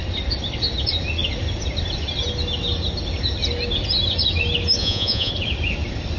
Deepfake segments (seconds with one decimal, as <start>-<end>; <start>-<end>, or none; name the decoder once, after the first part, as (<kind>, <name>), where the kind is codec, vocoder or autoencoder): 4.8-5.3 (vocoder, Vocos)